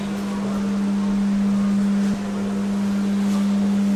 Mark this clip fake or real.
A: real